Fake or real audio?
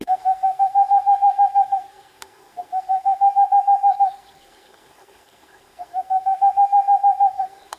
fake